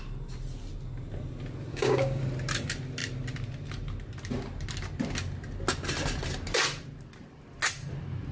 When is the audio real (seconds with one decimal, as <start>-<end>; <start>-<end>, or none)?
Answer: 0.0-1.7; 2.2-8.3